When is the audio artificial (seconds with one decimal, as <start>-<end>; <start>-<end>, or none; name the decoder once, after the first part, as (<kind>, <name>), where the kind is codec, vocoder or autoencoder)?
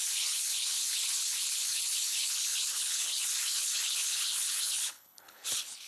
0.0-5.9 (codec, HILCodec)